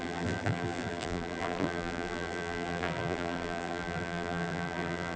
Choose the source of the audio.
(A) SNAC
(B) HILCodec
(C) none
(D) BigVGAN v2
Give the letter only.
D